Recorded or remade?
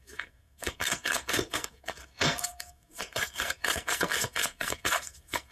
remade